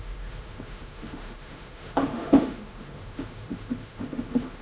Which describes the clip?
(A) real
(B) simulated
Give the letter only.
B